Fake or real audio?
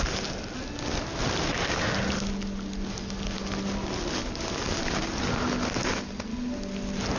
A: real